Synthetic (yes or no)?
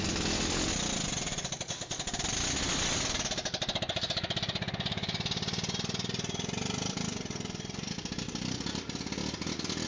no